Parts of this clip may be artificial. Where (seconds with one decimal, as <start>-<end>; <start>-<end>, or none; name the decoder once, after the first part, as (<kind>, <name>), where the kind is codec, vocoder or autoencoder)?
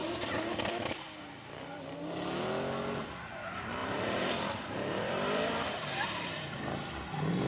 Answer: 0.0-1.2 (vocoder, BigVGAN v2); 3.8-6.6